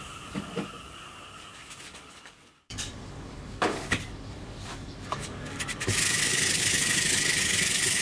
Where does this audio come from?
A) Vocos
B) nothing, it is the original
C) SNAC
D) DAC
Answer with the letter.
D